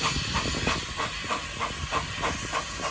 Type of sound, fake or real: real